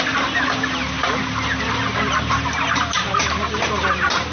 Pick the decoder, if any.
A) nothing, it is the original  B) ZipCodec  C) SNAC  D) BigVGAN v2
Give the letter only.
A